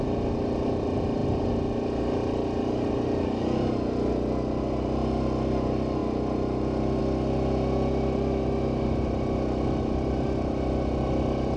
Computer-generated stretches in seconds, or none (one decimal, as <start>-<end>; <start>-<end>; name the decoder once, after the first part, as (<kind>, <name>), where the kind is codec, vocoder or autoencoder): none